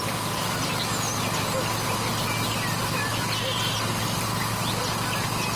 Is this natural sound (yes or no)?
yes